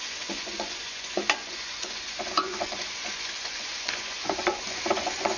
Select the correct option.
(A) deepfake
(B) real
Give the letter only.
A